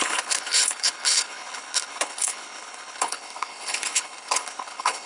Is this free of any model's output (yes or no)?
no